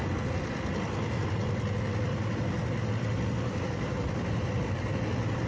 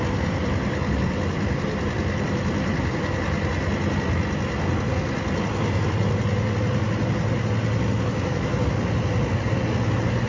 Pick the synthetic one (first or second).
first